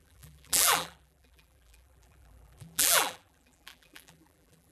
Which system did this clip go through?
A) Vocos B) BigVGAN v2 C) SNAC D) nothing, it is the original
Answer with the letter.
B